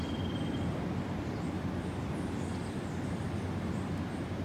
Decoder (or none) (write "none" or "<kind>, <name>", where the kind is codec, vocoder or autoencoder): vocoder, BigVGAN v2